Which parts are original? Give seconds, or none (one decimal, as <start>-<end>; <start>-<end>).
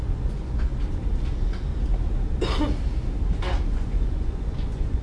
0.7-3.7